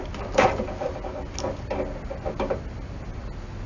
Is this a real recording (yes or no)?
yes